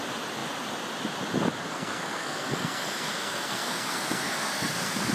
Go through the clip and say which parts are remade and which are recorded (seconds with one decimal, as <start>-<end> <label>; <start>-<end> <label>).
0.0-1.7 recorded; 1.7-5.1 remade